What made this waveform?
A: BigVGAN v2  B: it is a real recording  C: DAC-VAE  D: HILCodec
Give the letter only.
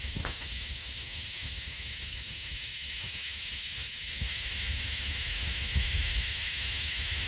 C